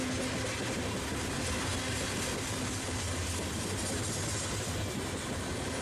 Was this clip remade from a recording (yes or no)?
no